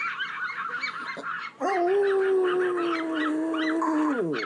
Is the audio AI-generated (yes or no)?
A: no